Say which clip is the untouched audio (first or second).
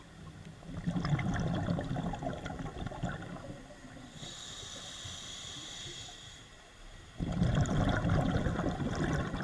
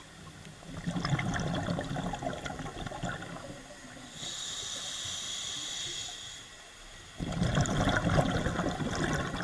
second